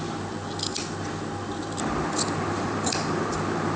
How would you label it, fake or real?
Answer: real